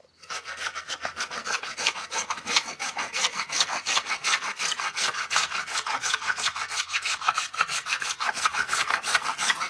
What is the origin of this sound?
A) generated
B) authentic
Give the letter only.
A